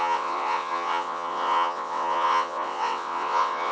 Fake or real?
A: fake